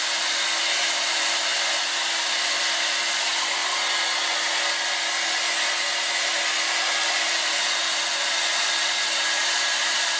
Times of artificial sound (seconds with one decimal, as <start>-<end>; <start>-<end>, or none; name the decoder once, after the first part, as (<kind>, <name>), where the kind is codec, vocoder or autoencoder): none